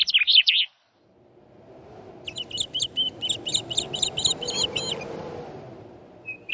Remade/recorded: recorded